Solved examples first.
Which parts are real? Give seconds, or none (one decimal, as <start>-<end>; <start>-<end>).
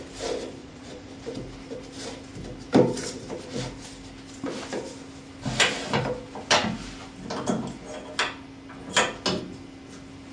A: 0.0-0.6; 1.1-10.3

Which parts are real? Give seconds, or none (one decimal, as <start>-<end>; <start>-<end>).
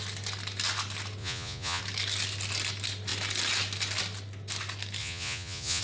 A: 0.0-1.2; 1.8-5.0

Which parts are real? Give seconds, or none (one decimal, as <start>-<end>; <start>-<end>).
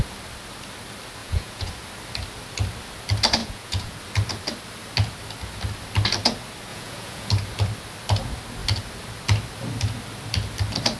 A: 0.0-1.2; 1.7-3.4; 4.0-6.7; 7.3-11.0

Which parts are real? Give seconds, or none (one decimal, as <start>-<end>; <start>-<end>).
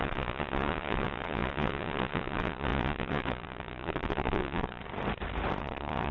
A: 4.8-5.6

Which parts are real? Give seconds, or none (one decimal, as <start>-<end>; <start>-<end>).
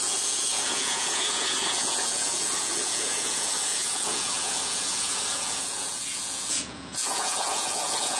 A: none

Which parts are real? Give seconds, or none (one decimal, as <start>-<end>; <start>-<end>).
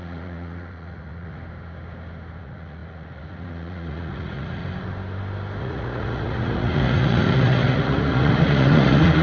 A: 1.4-2.4; 4.6-5.6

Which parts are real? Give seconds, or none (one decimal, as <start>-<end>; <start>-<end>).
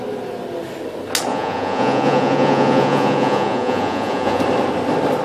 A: 0.0-1.3; 4.4-5.2